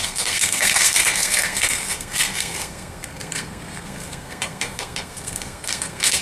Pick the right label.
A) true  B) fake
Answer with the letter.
B